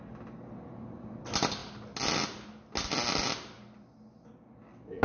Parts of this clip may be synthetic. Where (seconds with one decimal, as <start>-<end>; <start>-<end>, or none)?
none